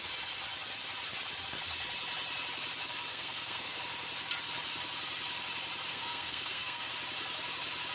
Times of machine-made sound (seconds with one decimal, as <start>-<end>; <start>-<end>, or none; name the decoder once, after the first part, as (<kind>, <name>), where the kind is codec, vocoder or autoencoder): 3.1-3.8 (codec, SNAC); 5.9-6.9